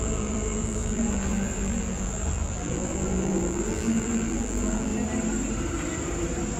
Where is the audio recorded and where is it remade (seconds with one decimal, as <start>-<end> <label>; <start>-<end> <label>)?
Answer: 0.0-4.9 remade; 4.9-6.6 recorded